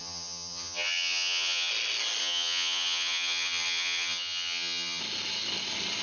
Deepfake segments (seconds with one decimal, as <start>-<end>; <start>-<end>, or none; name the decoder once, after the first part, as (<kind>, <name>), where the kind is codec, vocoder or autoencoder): 0.0-1.7 (vocoder, HiFi-GAN); 2.2-5.0